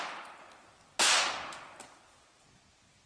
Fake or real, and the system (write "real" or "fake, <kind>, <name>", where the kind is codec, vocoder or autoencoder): real